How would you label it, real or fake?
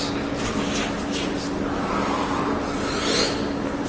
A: real